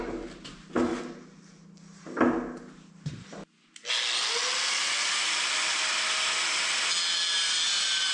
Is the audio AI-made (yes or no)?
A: no